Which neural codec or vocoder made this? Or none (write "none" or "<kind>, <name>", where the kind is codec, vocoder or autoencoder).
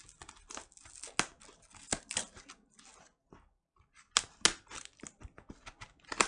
none